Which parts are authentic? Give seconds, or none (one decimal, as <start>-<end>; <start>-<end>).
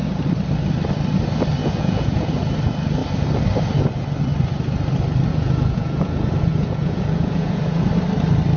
0.0-1.6; 2.3-5.3; 7.9-8.6